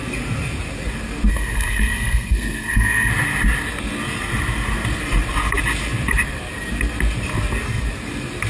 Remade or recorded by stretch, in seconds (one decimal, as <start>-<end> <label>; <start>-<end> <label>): 0.0-1.3 recorded; 1.3-3.1 remade; 3.1-8.5 recorded

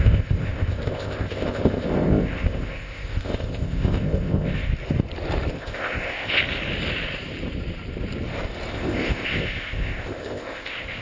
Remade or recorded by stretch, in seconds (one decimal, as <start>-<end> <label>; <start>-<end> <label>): 0.0-4.7 remade; 4.7-5.5 recorded; 5.5-6.4 remade; 6.4-8.7 recorded; 8.7-11.0 remade